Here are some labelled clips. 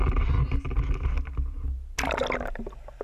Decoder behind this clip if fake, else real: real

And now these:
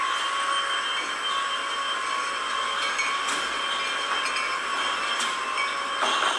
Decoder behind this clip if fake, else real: real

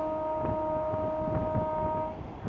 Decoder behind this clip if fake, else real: real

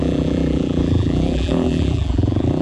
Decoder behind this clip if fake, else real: fake, vocoder, BigVGAN v2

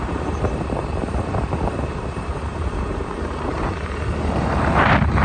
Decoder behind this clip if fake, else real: fake, vocoder, BigVGAN v2